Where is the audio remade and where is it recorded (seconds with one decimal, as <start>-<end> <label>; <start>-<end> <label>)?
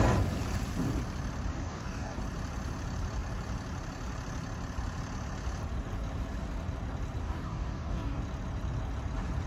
0.0-1.5 recorded; 1.5-2.2 remade; 2.2-7.2 recorded; 7.2-8.2 remade; 8.2-9.5 recorded